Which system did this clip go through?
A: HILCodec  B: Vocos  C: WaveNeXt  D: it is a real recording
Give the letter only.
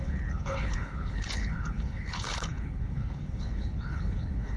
A